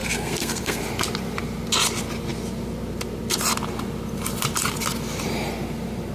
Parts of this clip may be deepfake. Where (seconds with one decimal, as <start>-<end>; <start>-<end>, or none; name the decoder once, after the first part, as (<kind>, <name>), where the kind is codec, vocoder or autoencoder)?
0.0-0.8 (codec, SNAC)